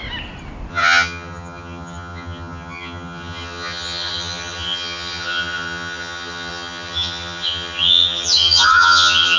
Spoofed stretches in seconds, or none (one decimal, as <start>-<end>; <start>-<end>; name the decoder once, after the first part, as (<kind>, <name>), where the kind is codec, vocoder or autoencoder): 0.7-9.4 (vocoder, HiFi-GAN)